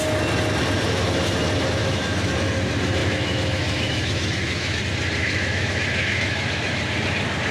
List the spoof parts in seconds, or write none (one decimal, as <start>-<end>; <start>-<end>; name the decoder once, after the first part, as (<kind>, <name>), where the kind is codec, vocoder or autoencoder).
1.8-2.3 (autoencoder, DAC-VAE); 3.0-4.8; 5.2-6.8

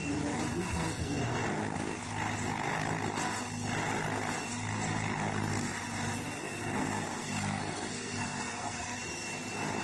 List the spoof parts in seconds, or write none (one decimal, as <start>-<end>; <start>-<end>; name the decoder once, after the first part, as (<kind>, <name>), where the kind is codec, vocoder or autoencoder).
0.6-1.4 (codec, SNAC); 6.4-9.0